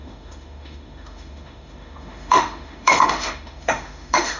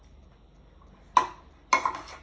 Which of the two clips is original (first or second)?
second